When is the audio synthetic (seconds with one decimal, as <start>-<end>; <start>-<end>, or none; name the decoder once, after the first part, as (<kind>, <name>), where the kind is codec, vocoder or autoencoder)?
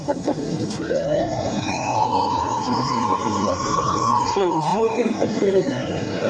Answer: 0.0-6.3 (codec, SNAC)